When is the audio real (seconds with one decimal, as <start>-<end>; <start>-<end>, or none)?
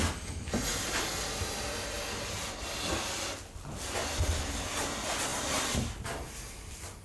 0.0-7.0